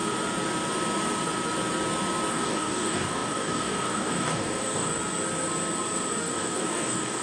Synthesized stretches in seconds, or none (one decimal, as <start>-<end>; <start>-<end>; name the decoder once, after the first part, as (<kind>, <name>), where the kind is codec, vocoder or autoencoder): 2.3-4.9 (codec, DAC); 6.2-7.2

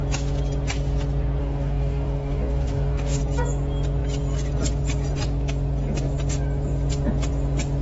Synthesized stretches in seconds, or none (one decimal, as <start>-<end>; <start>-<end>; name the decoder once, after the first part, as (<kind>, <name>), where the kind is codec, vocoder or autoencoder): 1.4-3.2 (codec, DAC)